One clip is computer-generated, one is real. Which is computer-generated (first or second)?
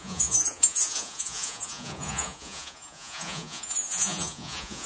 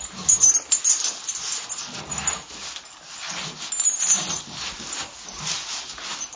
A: first